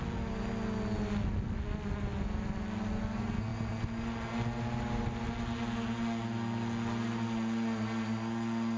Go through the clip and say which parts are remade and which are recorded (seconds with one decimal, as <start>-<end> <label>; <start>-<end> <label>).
0.0-8.8 recorded